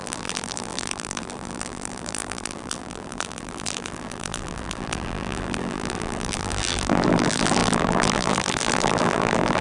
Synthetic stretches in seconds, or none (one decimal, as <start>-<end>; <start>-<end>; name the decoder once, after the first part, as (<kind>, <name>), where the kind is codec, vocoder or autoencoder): 0.0-9.6 (vocoder, BigVGAN v2)